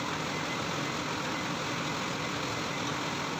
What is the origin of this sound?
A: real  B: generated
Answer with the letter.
A